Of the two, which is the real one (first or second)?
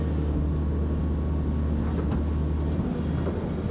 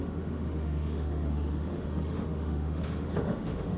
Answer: first